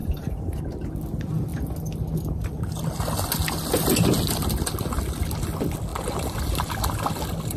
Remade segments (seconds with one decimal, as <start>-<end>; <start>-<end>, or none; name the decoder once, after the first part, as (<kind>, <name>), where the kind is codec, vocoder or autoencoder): 0.0-0.6 (vocoder, BigVGAN v2)